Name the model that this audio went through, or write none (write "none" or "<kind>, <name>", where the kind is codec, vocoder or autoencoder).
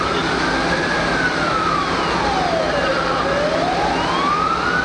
none